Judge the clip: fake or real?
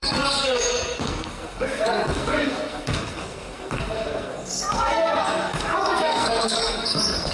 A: fake